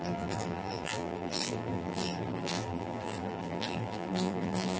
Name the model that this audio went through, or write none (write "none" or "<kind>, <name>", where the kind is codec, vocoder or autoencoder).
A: vocoder, BigVGAN v2